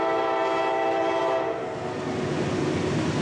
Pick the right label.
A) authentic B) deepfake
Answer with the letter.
A